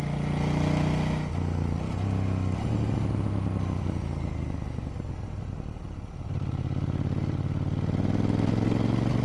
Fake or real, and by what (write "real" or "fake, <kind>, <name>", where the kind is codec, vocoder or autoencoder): real